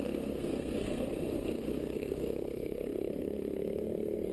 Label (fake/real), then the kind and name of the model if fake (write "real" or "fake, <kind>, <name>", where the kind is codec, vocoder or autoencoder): fake, codec, SNAC